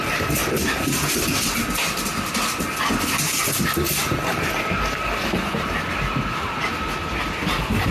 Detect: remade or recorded recorded